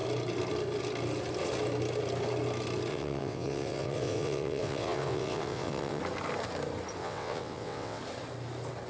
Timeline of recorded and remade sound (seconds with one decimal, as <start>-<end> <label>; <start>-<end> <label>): 0.0-2.9 recorded; 2.9-6.0 remade; 6.0-7.0 recorded; 7.0-8.0 remade; 8.0-8.9 recorded